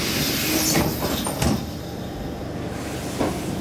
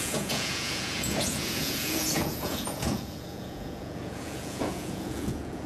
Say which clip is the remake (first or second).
second